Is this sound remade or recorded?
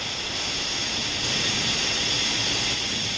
recorded